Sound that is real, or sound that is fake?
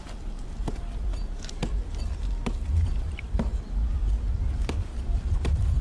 fake